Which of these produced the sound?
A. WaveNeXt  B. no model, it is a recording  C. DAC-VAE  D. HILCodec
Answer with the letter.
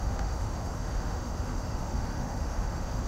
C